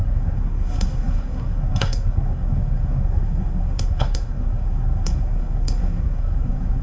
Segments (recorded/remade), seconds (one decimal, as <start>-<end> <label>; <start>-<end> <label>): 0.0-6.8 remade